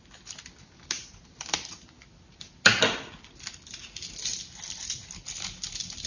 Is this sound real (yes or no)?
yes